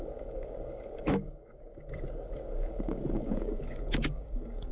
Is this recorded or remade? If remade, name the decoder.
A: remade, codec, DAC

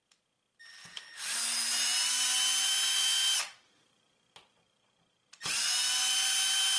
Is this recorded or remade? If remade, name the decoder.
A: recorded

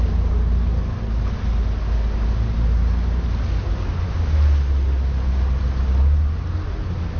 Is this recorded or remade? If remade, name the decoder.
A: recorded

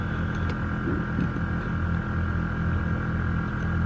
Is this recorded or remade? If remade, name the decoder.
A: recorded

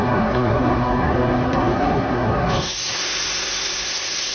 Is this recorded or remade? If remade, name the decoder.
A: remade, codec, SNAC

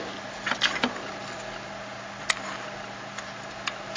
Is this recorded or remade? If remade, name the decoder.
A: recorded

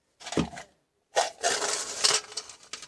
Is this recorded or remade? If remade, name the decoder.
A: recorded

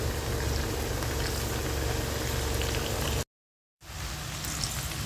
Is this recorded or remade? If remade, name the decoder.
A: recorded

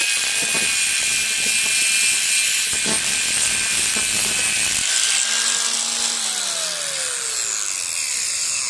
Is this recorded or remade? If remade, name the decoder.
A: recorded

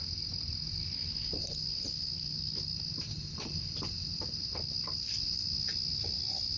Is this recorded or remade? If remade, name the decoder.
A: recorded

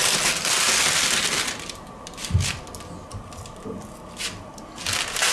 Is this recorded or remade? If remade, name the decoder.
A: recorded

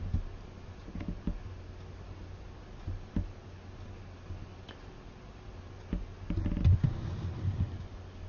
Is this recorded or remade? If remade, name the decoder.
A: recorded